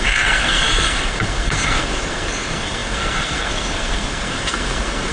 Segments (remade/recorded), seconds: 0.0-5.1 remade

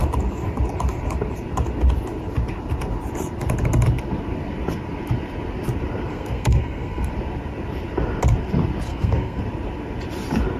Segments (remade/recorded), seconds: 0.0-6.1 recorded; 6.1-7.1 remade; 7.1-8.9 recorded; 8.9-9.4 remade; 9.4-10.6 recorded